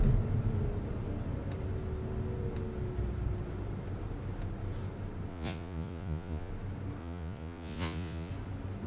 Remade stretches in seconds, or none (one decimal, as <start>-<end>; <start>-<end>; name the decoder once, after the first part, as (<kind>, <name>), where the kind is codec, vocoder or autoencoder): 5.3-6.5 (vocoder, Vocos); 7.0-8.3